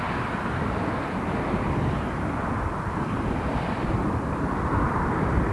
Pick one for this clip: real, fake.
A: fake